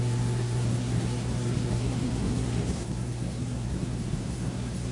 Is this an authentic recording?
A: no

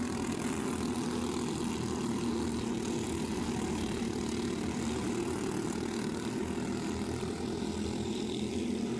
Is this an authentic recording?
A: yes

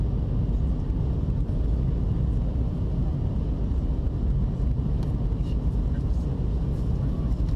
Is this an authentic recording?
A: yes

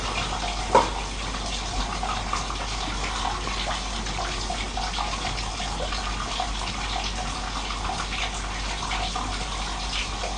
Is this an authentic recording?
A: yes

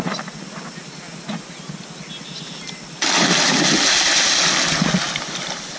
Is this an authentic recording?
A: yes